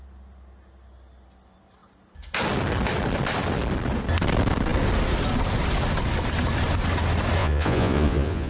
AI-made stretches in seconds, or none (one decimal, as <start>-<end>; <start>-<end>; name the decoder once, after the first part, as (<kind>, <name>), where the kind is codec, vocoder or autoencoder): 7.4-8.5 (vocoder, Vocos)